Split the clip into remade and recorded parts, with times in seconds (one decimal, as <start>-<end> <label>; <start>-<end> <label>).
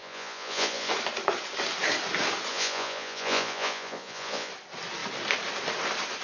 0.0-0.9 remade; 0.9-2.5 recorded; 2.5-4.5 remade; 4.5-6.2 recorded